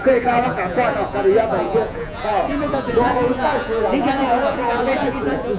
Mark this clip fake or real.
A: fake